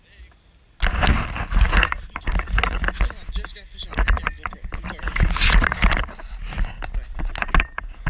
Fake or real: real